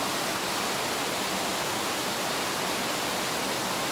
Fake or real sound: real